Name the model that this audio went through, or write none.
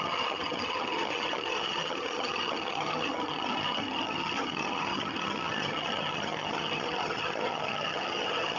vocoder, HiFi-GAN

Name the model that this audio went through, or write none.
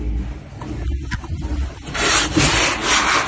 none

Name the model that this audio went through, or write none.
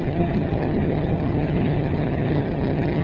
vocoder, HiFi-GAN